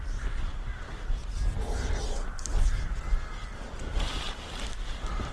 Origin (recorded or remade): recorded